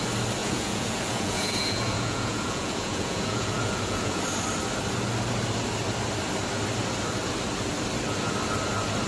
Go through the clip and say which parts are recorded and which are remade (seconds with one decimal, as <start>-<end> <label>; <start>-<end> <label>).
0.0-0.4 recorded; 0.4-4.2 remade; 4.2-9.1 recorded